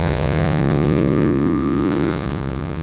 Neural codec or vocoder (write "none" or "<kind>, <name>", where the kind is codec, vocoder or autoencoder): vocoder, Vocos